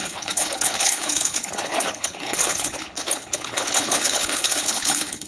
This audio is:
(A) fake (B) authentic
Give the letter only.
A